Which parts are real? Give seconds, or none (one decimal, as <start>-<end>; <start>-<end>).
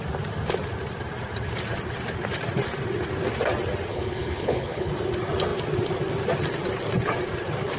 0.0-3.9; 4.9-7.8